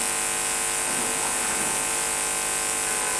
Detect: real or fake real